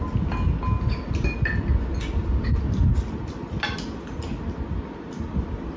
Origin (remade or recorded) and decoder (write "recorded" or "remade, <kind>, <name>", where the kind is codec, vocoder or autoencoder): recorded